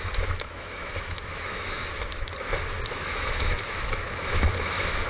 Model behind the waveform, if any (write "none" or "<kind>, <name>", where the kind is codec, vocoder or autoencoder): autoencoder, DAC-VAE